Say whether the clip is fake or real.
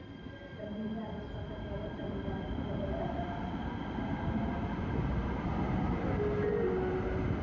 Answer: real